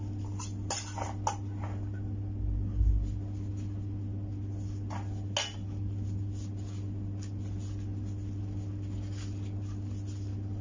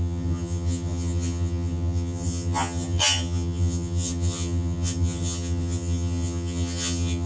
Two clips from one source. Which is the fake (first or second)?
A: second